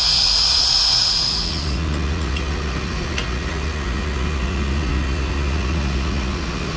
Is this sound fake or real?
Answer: fake